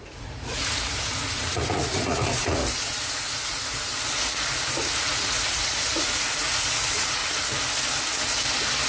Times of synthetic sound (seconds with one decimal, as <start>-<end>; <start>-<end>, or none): 0.0-2.6; 3.1-3.9; 4.7-7.2